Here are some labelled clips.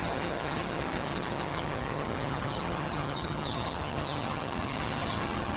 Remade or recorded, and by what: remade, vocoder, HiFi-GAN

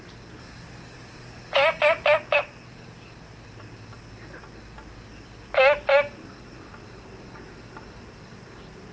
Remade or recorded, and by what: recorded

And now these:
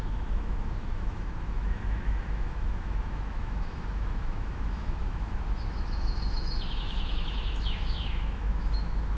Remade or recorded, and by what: remade, autoencoder, DAC-VAE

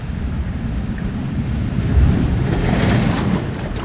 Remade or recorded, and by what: remade, vocoder, BigVGAN v2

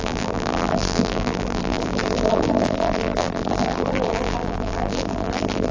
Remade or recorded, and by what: remade, vocoder, BigVGAN v2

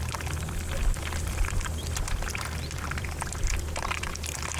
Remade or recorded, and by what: remade, vocoder, BigVGAN v2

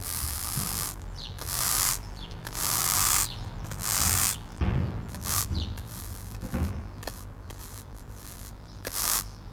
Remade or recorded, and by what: remade, vocoder, BigVGAN v2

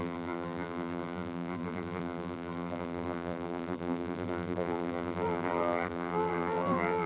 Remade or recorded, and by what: remade, vocoder, BigVGAN v2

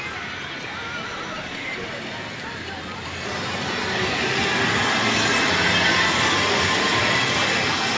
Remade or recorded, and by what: recorded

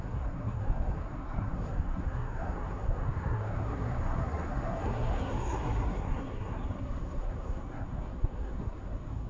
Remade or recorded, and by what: remade, codec, SNAC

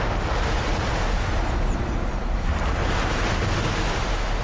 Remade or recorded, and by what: recorded